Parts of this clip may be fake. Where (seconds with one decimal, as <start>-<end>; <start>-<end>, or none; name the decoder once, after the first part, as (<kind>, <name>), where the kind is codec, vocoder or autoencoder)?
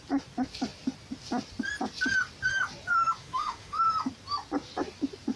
3.2-3.8 (autoencoder, DAC-VAE)